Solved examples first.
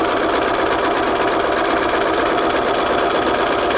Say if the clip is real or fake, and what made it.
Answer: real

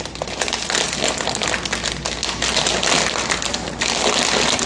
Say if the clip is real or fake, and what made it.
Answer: real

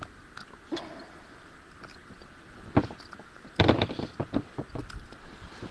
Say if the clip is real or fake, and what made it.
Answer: real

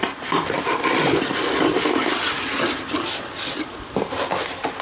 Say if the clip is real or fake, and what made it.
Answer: real